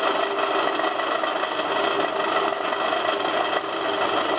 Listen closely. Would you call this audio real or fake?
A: real